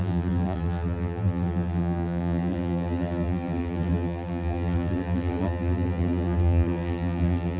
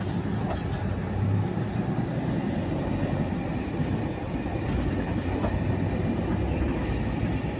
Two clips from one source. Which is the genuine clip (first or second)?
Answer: second